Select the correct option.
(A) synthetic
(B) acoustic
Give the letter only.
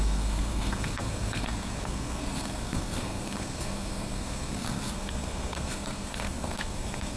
A